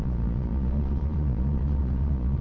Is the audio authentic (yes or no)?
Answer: no